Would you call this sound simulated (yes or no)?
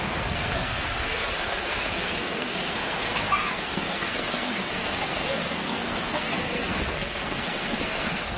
yes